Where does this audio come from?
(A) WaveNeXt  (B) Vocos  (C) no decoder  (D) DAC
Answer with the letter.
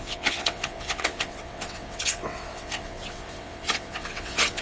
A